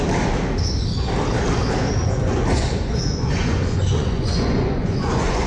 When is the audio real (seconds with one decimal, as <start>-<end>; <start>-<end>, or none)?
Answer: 0.0-2.0